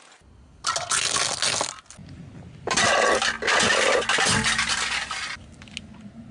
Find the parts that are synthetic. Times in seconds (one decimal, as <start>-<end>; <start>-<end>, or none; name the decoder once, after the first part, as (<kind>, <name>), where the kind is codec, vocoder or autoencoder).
none

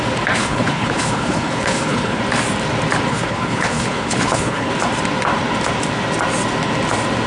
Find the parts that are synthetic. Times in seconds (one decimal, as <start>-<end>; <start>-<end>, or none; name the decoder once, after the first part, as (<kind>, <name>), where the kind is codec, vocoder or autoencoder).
0.4-2.2 (codec, HILCodec); 3.1-4.7

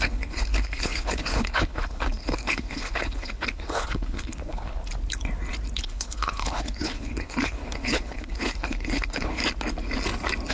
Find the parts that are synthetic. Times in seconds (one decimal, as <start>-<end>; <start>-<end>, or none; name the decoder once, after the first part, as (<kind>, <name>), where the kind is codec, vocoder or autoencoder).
0.0-4.8 (codec, HILCodec); 5.8-9.4

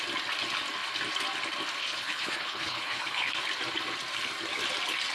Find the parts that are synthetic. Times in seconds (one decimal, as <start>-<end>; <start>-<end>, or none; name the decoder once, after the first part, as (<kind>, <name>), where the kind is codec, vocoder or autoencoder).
1.8-3.4 (codec, HILCodec)

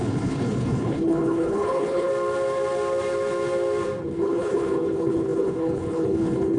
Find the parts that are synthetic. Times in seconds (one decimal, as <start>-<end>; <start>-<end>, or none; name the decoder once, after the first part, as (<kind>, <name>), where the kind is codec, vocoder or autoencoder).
0.0-2.1 (codec, HILCodec); 4.0-6.6

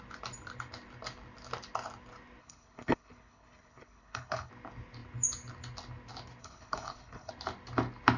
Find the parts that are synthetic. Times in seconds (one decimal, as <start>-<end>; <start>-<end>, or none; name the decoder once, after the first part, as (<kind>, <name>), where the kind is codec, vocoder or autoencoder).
2.4-4.5 (codec, HILCodec); 6.4-7.3

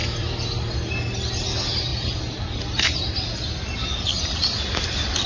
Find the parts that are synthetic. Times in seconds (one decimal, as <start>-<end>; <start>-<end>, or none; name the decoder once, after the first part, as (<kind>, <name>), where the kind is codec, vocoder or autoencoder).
none

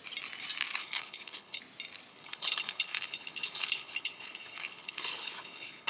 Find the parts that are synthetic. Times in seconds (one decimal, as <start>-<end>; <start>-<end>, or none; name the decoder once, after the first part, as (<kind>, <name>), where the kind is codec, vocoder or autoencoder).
0.8-1.6 (codec, HILCodec); 2.1-5.9